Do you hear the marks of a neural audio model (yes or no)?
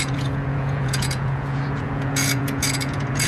yes